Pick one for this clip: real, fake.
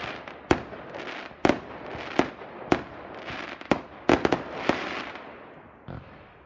real